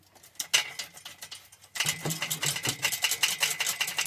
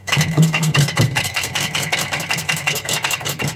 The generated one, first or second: second